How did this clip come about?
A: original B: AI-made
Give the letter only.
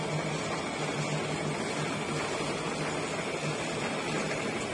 A